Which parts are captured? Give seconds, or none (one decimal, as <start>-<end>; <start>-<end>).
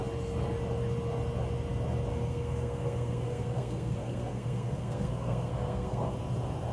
0.0-2.1; 6.1-6.7